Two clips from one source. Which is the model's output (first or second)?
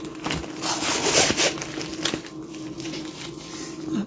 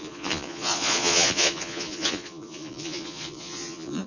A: second